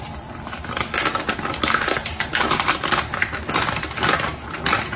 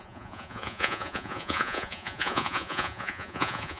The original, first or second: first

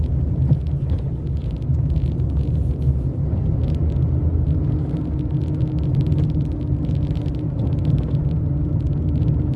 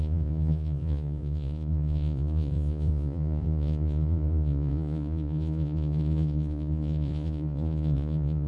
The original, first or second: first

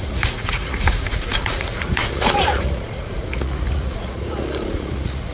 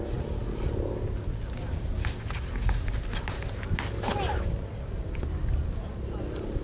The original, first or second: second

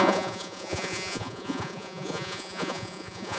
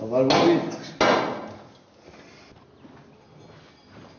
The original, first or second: second